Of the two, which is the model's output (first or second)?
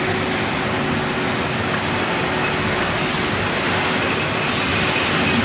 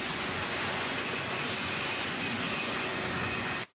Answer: second